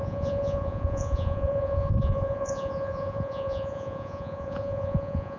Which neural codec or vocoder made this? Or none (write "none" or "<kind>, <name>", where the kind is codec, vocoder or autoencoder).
vocoder, Vocos